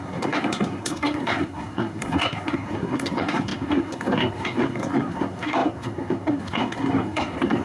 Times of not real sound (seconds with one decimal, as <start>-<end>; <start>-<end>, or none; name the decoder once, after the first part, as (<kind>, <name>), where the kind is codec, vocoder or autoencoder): 0.0-7.6 (codec, SNAC)

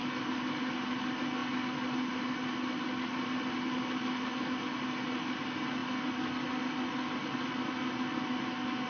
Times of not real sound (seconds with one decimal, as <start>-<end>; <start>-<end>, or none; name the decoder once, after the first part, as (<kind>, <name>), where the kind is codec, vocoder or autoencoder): none

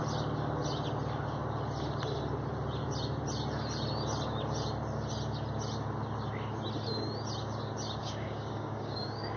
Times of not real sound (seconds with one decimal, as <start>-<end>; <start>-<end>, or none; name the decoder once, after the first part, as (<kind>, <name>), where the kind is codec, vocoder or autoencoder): 8.0-9.4 (codec, DAC)

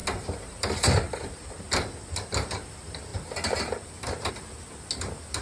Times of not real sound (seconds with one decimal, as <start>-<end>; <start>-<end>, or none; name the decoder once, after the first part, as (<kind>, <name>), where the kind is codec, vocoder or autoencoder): 0.0-1.6 (vocoder, BigVGAN v2); 3.1-4.3

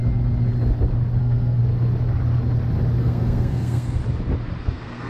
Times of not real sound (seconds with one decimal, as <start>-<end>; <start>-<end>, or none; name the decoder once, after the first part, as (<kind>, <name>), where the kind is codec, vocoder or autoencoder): 1.2-1.6 (codec, SNAC); 3.0-4.0; 4.6-5.1

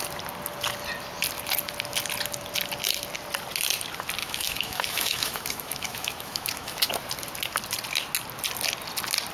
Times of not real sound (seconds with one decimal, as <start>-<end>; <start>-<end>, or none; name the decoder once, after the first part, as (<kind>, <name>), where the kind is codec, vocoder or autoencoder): 4.2-6.9 (autoencoder, DAC-VAE)